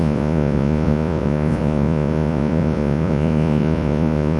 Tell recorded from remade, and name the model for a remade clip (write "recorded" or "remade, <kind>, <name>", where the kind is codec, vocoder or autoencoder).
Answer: remade, vocoder, Vocos